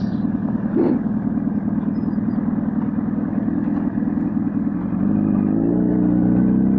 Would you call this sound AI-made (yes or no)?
no